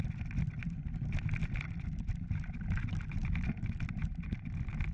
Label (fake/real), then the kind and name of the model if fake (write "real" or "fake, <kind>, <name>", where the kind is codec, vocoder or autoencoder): real